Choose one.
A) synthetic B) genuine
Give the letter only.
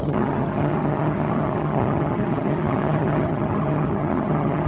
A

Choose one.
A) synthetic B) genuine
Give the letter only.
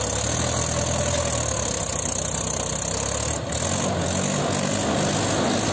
B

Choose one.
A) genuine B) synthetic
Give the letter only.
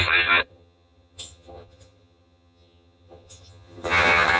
B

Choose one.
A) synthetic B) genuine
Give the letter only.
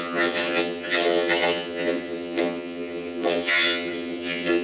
A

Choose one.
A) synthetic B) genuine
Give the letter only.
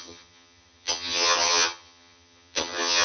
A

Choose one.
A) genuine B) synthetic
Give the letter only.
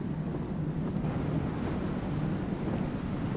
A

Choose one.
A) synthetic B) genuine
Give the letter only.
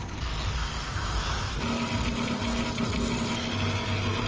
B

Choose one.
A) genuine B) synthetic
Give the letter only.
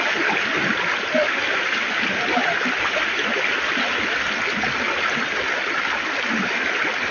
A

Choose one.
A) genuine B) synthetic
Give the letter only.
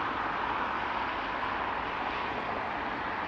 A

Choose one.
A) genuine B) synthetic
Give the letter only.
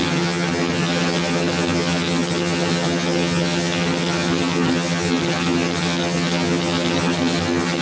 B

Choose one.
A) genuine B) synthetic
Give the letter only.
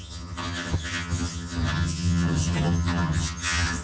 B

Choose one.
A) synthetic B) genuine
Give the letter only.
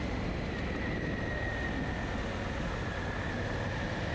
B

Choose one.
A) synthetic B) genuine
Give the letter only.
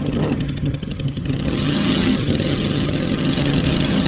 A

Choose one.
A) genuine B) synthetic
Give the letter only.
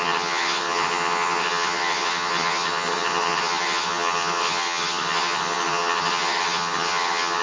B